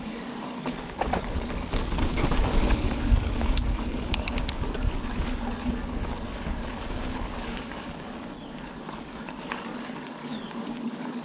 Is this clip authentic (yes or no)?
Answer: no